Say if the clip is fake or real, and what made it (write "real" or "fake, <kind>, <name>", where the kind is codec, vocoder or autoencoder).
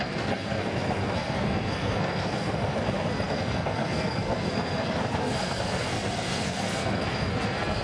fake, codec, SNAC